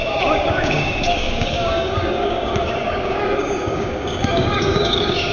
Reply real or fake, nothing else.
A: fake